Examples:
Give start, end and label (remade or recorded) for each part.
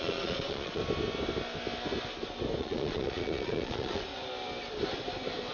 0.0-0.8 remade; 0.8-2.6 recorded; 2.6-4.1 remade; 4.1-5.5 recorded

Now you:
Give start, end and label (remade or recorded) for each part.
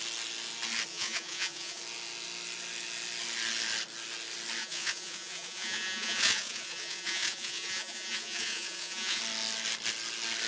0.0-0.9 recorded; 0.9-1.8 remade; 1.8-4.6 recorded; 4.6-9.2 remade; 9.2-10.5 recorded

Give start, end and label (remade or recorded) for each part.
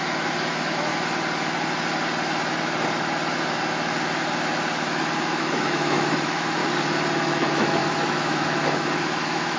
0.0-0.9 remade; 0.9-5.4 recorded; 5.4-6.6 remade; 6.6-7.3 recorded; 7.3-9.6 remade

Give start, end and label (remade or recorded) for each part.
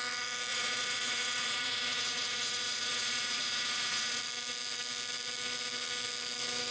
0.0-0.5 recorded; 0.5-4.2 remade; 4.2-6.7 recorded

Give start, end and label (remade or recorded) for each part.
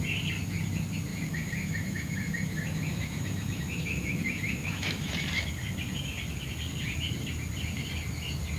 0.0-1.1 recorded; 1.1-5.1 remade; 5.1-8.6 recorded